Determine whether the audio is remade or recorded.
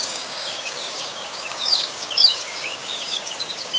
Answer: remade